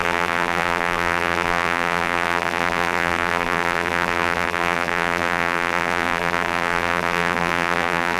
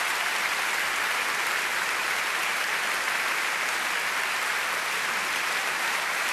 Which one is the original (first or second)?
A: second